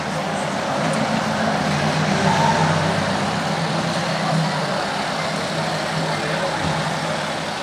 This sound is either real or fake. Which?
real